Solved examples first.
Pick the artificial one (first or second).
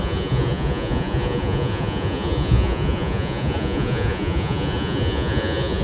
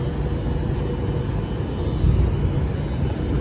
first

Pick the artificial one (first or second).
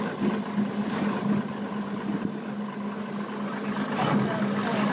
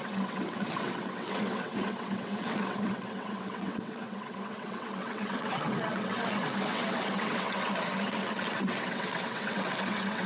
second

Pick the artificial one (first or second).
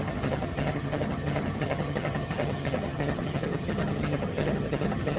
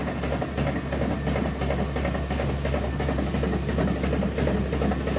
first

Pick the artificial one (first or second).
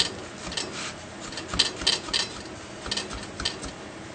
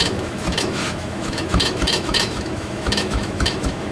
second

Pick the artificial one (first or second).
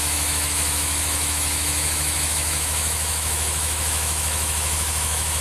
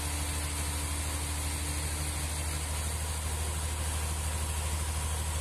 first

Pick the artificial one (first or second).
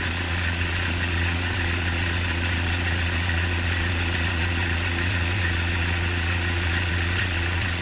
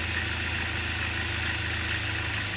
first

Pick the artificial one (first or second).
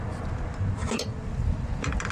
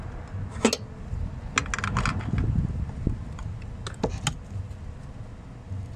first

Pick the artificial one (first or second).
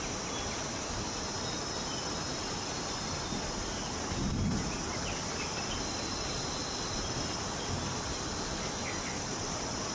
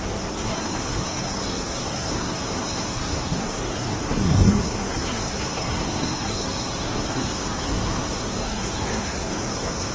second